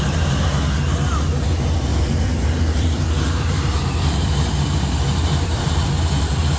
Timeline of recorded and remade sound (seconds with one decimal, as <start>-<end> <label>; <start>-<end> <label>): 0.0-1.9 recorded; 1.9-5.9 remade; 5.9-6.6 recorded